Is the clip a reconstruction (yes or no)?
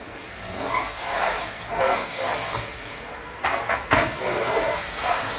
yes